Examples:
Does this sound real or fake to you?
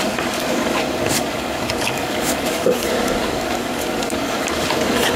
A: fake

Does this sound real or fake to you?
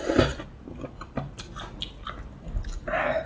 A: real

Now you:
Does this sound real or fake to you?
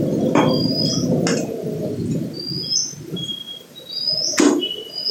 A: real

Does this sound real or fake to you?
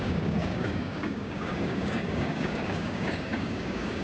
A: fake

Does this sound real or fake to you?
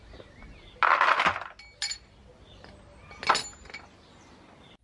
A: real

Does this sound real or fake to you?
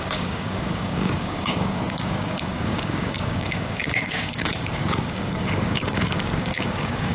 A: fake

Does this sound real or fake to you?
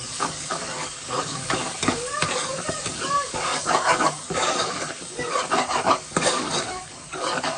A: fake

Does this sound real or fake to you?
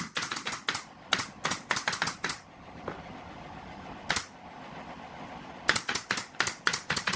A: real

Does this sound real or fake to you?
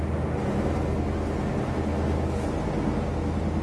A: real